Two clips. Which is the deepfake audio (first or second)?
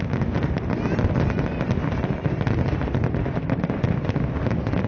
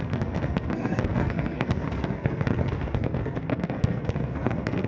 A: second